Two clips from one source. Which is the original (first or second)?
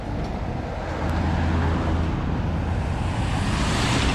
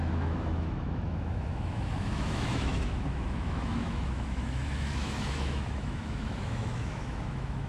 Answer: first